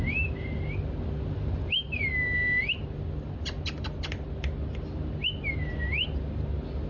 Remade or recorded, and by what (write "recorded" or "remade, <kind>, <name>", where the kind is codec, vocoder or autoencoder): recorded